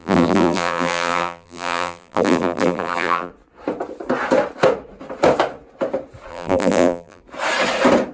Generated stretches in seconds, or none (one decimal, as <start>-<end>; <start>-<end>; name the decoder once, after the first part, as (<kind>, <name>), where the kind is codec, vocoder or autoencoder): 0.0-3.3 (vocoder, BigVGAN v2); 6.3-7.2